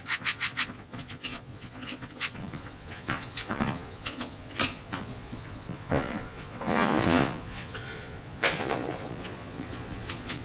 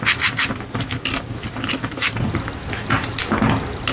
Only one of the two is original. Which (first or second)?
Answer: second